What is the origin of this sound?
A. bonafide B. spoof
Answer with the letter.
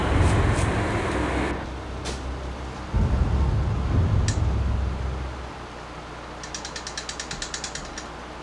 A